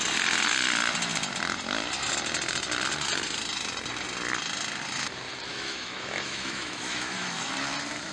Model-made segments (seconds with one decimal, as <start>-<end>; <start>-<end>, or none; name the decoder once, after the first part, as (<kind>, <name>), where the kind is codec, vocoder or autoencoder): 5.5-7.5 (autoencoder, DAC-VAE)